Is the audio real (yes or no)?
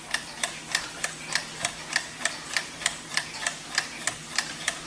no